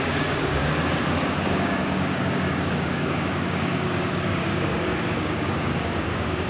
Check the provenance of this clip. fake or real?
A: fake